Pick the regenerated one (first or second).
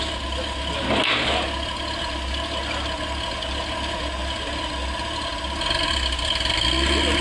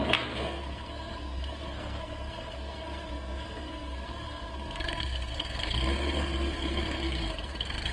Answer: second